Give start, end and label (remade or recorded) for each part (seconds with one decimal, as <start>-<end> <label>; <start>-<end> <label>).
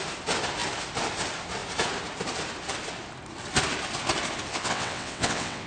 0.0-4.5 recorded; 4.5-5.7 remade